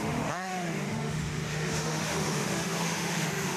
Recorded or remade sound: remade